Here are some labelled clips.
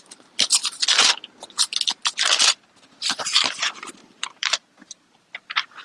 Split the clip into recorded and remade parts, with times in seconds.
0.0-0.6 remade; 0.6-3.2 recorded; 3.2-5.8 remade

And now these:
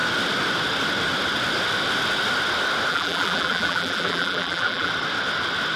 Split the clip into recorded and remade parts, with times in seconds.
0.0-2.9 recorded; 2.9-4.9 remade; 4.9-5.8 recorded

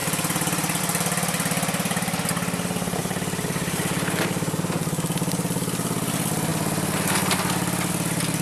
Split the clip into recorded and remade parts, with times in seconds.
0.0-0.8 remade; 0.8-3.0 recorded; 3.0-4.6 remade; 4.6-8.4 recorded

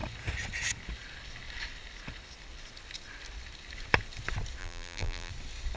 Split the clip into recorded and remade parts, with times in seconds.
0.0-4.6 recorded; 4.6-5.3 remade; 5.3-5.8 recorded

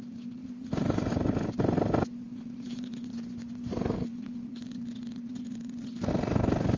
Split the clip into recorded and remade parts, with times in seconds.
0.0-0.4 recorded; 0.4-1.1 remade; 1.1-2.3 recorded; 2.3-6.1 remade; 6.1-6.8 recorded

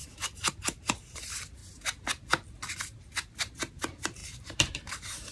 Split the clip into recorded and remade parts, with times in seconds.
0.0-1.6 remade; 1.6-2.8 recorded; 2.8-5.3 remade

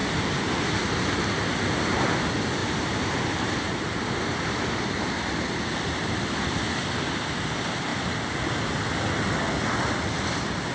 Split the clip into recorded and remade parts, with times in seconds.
0.0-0.8 remade; 0.8-2.6 recorded; 2.6-5.2 remade; 5.2-10.7 recorded

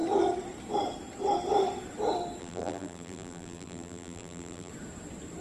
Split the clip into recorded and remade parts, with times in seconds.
0.0-2.4 recorded; 2.4-4.7 remade; 4.7-5.4 recorded